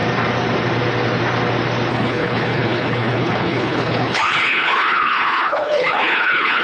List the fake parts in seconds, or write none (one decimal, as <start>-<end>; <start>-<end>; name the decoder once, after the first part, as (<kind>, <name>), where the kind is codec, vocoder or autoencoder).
1.9-6.6 (codec, HILCodec)